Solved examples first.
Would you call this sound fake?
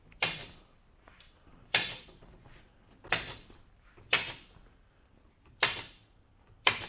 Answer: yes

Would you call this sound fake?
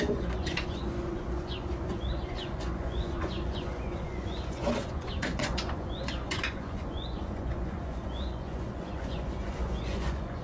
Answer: yes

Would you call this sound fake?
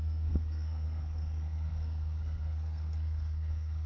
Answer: yes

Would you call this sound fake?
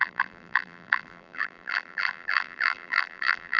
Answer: yes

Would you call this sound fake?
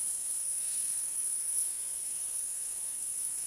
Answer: yes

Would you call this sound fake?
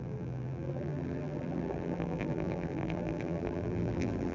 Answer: yes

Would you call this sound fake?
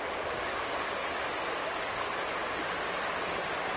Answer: no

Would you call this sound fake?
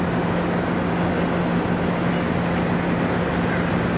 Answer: no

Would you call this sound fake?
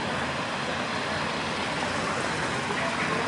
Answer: no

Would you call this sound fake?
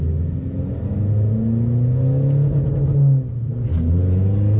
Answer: no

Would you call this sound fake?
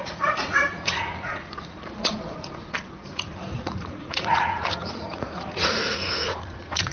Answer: yes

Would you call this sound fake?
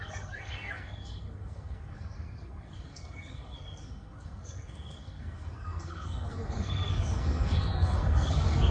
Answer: yes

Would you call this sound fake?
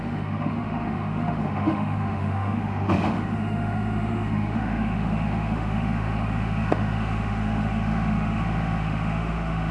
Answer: yes